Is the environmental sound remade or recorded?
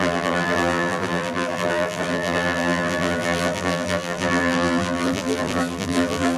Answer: remade